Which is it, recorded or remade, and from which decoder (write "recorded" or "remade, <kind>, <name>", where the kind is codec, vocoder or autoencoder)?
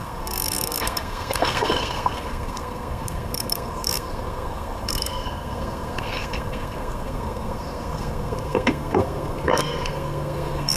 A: remade, codec, SNAC